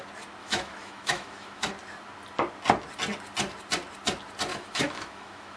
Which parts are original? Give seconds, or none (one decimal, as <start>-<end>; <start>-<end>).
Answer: 0.0-0.4; 1.7-4.5